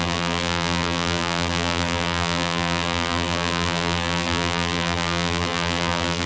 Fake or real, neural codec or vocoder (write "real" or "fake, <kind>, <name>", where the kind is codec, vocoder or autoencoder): fake, vocoder, BigVGAN v2